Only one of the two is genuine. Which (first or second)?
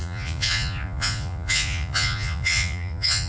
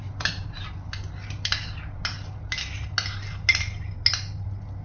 second